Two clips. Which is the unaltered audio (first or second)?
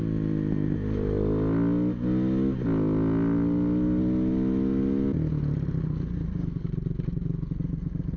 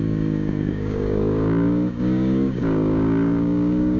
first